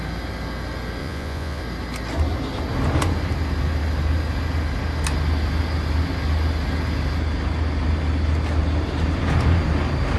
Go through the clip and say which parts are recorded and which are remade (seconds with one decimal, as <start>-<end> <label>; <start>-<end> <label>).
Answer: 0.0-1.0 recorded; 1.0-1.6 remade; 1.6-10.2 recorded